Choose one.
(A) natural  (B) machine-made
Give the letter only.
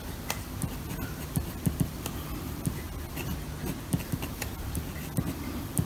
A